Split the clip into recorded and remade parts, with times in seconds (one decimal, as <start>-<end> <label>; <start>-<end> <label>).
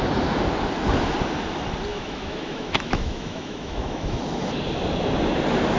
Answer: 0.0-1.9 recorded; 1.9-4.2 remade; 4.2-5.8 recorded